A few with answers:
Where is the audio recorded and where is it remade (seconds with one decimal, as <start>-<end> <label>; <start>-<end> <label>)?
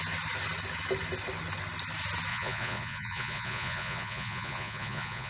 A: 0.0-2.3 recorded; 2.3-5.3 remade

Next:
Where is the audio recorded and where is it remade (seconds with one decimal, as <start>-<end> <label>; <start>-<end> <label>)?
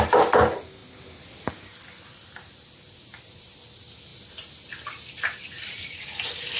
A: 0.0-6.6 recorded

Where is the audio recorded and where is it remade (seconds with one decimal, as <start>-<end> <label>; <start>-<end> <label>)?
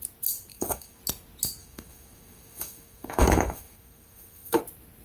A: 0.0-0.5 recorded; 0.5-1.0 remade; 1.0-1.6 recorded; 1.6-4.6 remade; 4.6-5.0 recorded